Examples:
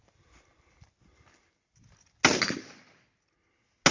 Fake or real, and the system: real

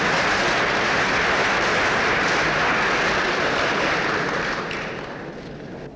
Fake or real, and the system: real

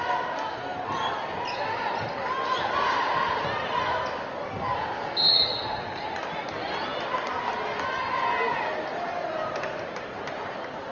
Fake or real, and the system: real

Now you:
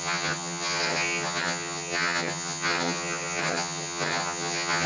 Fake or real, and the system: fake, vocoder, HiFi-GAN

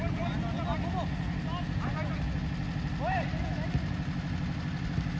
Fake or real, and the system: real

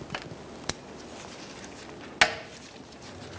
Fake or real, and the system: real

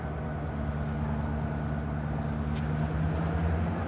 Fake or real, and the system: real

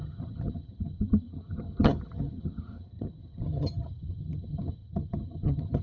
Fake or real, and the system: fake, vocoder, HiFi-GAN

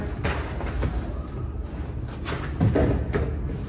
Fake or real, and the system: real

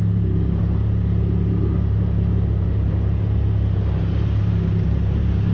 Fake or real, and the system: real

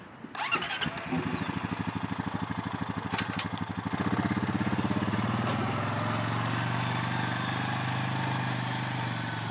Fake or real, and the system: real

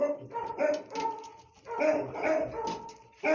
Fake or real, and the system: real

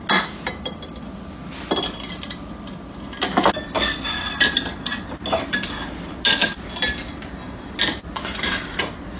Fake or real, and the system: real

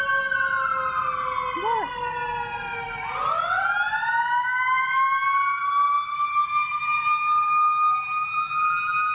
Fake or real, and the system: real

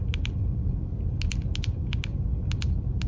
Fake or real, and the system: real